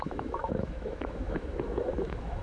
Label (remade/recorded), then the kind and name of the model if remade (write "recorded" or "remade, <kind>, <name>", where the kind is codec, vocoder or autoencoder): remade, autoencoder, DAC-VAE